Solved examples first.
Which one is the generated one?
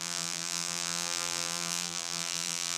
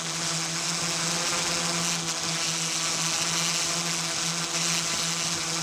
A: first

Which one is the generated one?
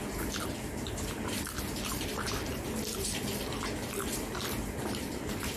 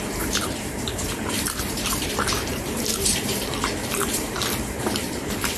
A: second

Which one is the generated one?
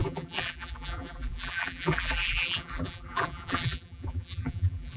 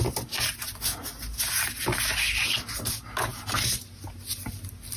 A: first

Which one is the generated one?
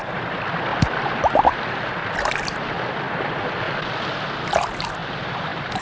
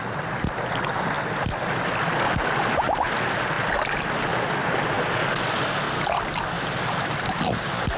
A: first